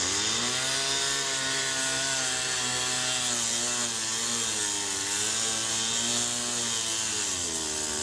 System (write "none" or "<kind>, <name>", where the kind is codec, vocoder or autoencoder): none